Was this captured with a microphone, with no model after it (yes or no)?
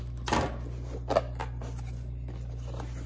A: yes